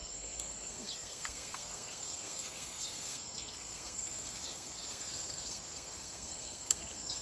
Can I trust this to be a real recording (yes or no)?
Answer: no